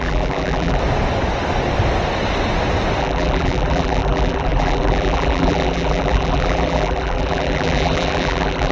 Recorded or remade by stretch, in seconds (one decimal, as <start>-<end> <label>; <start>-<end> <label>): 0.0-0.8 remade; 0.8-3.0 recorded; 3.0-8.7 remade